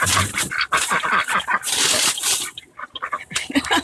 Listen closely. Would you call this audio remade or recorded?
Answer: recorded